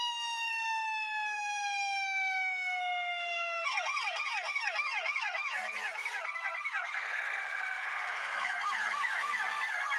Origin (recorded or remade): remade